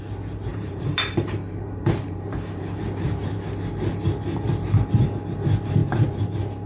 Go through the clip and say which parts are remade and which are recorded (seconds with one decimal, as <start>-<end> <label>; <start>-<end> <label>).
0.0-0.5 recorded; 0.5-2.8 remade; 2.8-6.7 recorded